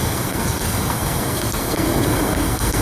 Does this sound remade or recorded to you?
remade